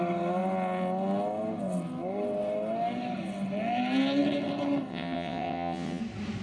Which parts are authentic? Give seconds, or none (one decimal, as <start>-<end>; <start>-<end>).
0.0-4.9; 6.0-6.4